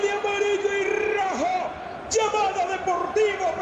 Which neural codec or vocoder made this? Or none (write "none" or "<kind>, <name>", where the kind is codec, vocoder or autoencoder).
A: vocoder, BigVGAN v2